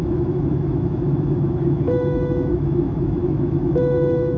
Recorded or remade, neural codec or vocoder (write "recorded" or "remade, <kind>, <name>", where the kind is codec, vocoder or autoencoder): remade, autoencoder, DAC-VAE